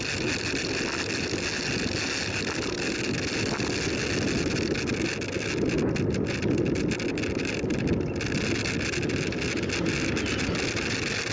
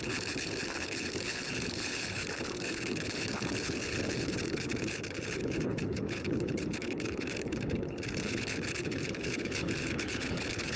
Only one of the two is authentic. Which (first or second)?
first